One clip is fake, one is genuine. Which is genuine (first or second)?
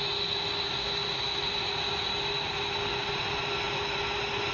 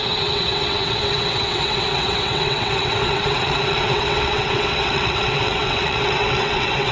first